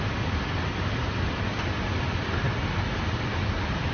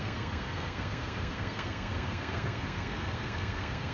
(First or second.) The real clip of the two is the first